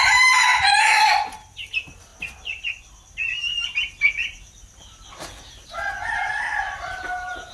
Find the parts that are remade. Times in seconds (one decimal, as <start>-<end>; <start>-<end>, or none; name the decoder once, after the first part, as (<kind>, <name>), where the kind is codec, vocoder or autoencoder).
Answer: 0.0-2.1 (vocoder, BigVGAN v2); 6.1-7.5